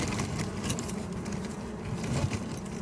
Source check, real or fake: real